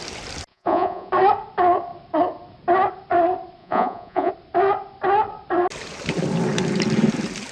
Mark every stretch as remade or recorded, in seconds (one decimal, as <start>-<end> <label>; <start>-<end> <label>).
0.0-0.5 recorded; 0.5-1.1 remade; 1.1-3.6 recorded; 3.6-4.3 remade; 4.3-7.5 recorded